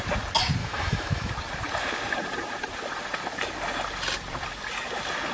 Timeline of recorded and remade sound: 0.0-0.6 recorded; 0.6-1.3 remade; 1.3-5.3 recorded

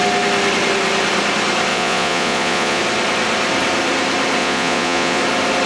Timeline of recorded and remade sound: 0.0-1.7 recorded; 1.7-2.8 remade; 2.8-4.4 recorded; 4.4-5.2 remade; 5.2-5.7 recorded